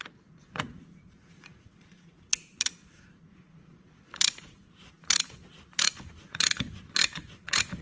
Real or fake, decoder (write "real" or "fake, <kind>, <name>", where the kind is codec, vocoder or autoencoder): fake, vocoder, Vocos